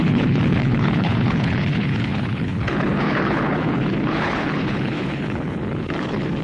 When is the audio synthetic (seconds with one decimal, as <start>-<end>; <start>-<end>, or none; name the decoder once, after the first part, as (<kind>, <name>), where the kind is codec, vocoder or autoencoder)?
0.0-6.4 (codec, HILCodec)